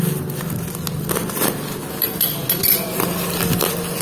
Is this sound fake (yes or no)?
no